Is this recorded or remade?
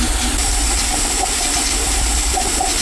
recorded